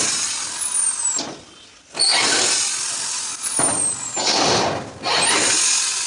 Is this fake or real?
real